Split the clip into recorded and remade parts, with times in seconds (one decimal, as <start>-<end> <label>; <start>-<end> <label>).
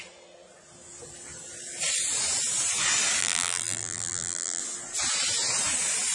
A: 0.0-3.2 recorded; 3.2-4.6 remade; 4.6-6.1 recorded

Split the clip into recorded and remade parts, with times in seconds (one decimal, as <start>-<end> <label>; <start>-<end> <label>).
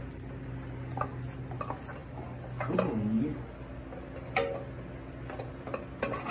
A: 0.0-6.3 recorded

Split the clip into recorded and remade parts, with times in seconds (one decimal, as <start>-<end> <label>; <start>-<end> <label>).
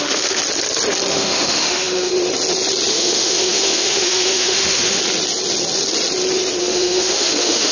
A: 0.0-0.4 remade; 0.4-1.1 recorded; 1.1-2.1 remade; 2.1-2.9 recorded; 2.9-5.0 remade; 5.0-6.6 recorded; 6.6-7.7 remade